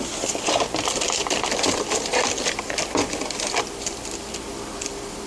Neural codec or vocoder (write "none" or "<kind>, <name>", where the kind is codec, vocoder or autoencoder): none